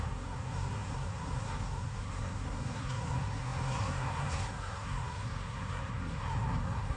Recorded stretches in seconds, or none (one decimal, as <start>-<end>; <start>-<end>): none